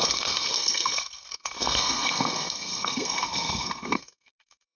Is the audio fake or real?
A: fake